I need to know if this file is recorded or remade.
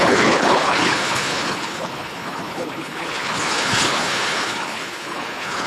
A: remade